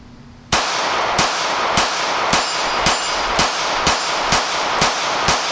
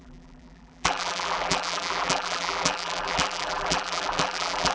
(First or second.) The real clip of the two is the first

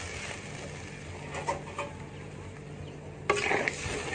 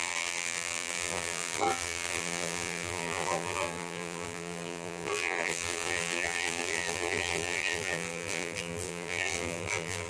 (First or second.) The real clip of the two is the first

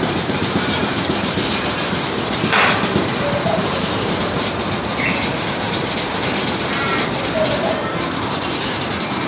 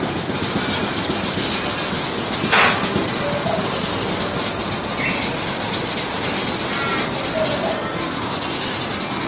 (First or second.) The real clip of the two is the second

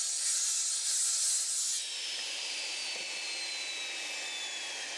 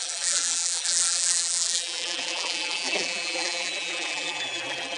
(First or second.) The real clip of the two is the first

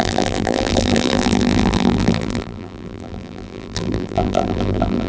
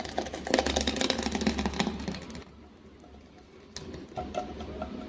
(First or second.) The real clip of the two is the second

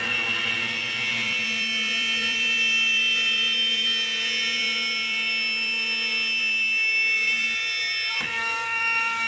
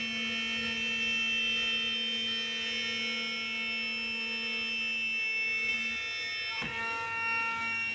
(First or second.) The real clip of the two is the second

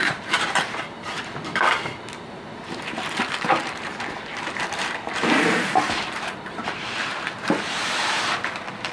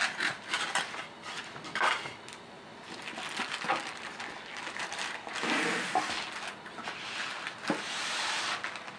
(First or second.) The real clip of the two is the second